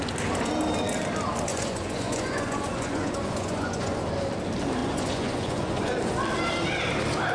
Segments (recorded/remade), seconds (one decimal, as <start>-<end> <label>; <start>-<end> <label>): 0.0-1.5 recorded; 1.5-4.0 remade; 4.0-4.8 recorded; 4.8-5.9 remade; 5.9-7.3 recorded